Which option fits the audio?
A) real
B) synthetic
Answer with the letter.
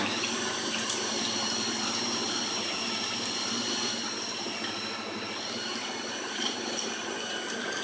B